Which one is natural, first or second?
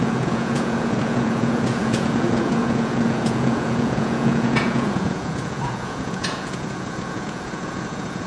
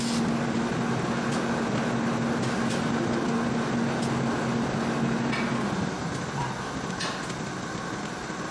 second